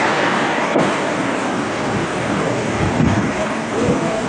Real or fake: fake